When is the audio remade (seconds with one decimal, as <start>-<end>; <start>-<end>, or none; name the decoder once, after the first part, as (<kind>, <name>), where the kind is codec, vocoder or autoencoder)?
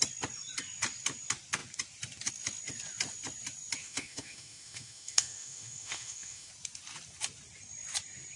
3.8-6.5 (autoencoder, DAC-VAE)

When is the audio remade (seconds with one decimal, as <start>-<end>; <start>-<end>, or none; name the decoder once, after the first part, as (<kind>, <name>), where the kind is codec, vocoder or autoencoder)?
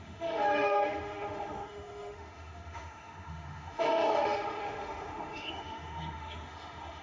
0.0-7.0 (autoencoder, DAC-VAE)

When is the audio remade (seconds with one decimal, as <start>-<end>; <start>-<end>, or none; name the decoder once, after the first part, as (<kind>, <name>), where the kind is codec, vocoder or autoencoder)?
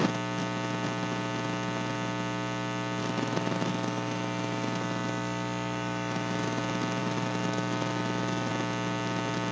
3.0-6.6 (autoencoder, DAC-VAE); 7.0-8.5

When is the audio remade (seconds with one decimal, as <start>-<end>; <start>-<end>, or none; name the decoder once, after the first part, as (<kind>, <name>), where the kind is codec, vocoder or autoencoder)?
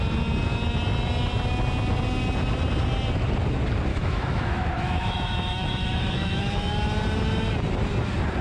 3.9-6.7 (autoencoder, DAC-VAE)